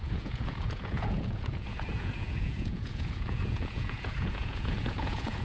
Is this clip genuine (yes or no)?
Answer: no